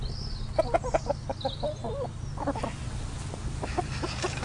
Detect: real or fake real